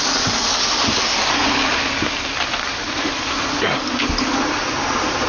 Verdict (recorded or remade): recorded